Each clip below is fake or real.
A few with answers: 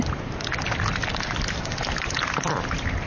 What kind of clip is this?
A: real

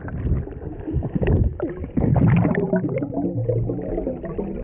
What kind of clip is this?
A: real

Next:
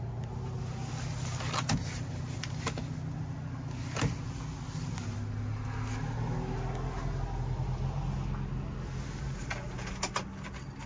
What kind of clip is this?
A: real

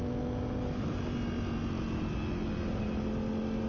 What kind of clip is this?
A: real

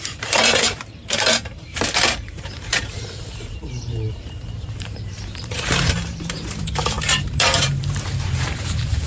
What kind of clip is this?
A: fake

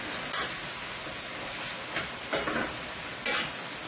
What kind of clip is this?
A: real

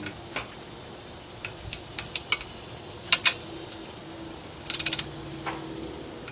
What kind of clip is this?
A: real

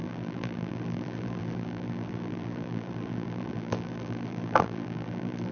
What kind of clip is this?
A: fake